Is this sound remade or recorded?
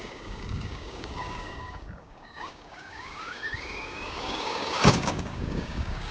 remade